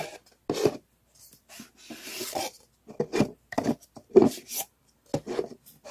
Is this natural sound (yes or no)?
yes